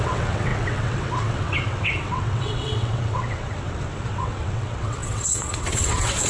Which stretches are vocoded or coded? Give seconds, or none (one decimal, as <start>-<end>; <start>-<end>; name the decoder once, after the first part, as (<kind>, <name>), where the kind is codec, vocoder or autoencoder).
0.0-6.3 (vocoder, WaveNeXt)